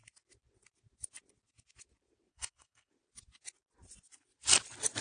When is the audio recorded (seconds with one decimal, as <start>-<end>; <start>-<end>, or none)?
0.0-2.3; 2.9-5.0